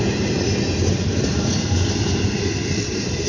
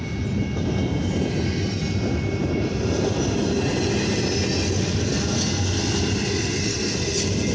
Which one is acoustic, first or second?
second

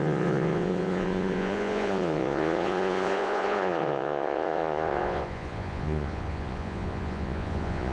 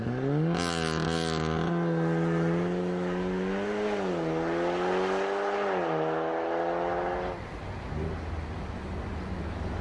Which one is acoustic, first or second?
second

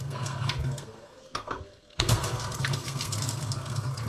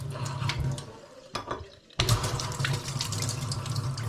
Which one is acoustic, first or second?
second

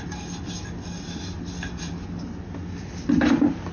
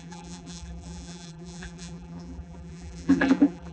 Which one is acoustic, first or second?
first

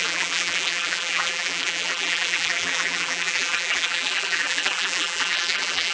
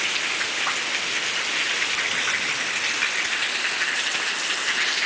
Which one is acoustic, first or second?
second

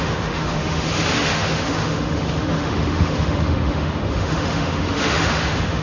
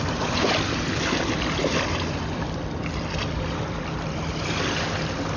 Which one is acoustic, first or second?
second